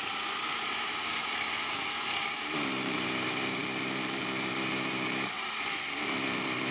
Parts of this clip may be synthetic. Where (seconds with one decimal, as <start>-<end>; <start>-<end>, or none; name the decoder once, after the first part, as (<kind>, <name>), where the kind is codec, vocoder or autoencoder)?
0.0-6.7 (vocoder, BigVGAN v2)